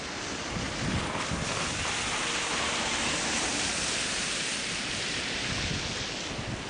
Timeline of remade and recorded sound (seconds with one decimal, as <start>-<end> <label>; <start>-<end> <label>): 0.0-2.2 recorded; 2.2-5.5 remade; 5.5-6.7 recorded